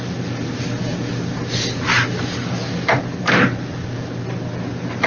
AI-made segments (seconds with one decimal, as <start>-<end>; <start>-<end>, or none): none